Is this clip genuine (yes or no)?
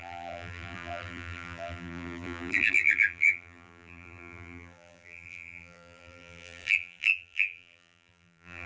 no